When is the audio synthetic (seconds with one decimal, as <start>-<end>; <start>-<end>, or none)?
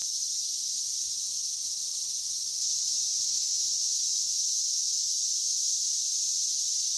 0.0-0.8; 3.3-5.9